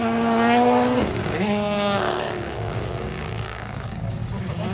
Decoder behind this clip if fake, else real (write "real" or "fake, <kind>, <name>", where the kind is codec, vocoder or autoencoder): fake, codec, DAC